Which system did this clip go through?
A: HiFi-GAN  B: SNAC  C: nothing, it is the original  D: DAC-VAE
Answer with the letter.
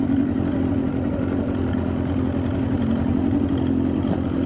C